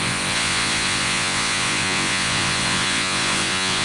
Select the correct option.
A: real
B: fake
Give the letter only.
B